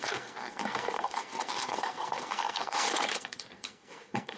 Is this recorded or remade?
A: remade